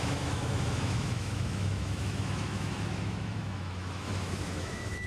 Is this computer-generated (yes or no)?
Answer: yes